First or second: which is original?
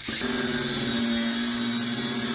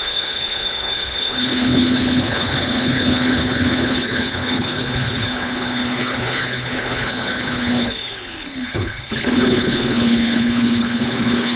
first